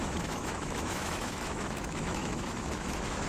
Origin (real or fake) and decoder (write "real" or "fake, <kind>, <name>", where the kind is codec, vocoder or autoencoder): fake, autoencoder, DAC-VAE